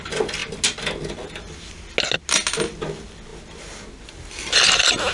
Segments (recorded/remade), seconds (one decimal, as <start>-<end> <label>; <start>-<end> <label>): 0.0-5.1 recorded